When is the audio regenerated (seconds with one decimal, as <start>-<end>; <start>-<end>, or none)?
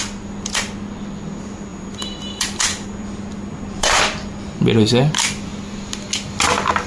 1.7-4.7